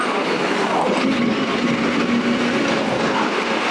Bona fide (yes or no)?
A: yes